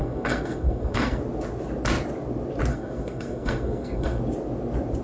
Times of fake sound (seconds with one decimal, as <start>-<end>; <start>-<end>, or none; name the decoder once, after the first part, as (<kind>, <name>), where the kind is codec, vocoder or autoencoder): 0.0-1.2 (codec, SNAC); 2.7-4.2